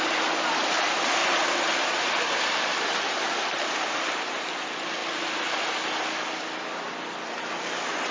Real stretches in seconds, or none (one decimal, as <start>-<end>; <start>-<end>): 0.0-8.1